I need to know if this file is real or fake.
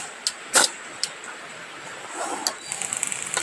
real